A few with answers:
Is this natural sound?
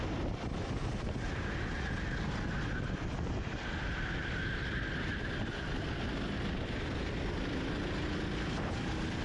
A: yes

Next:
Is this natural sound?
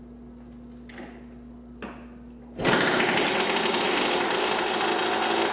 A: yes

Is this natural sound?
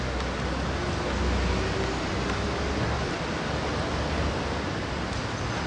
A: yes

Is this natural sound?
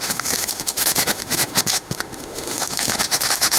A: no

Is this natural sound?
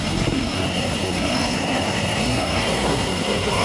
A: no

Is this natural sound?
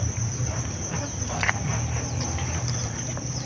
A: yes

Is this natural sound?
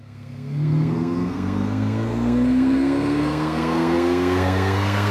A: no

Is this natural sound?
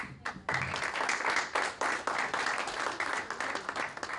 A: yes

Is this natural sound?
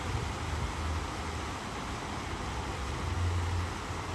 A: yes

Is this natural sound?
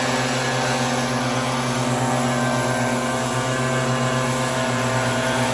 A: yes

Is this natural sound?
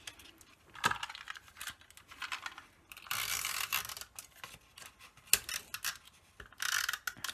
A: yes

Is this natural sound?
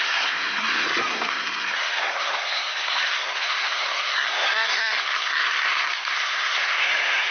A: no